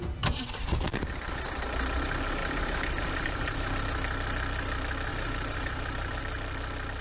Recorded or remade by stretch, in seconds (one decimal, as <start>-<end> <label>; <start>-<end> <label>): 0.0-2.4 recorded; 2.4-3.8 remade; 3.8-5.1 recorded; 5.1-6.2 remade; 6.2-7.0 recorded